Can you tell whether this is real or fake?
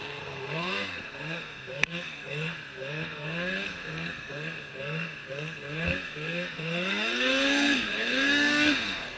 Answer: fake